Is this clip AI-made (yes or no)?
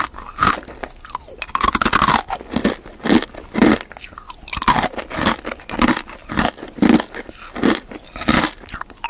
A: no